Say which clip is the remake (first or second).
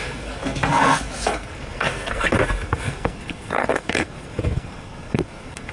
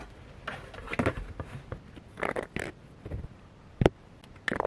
first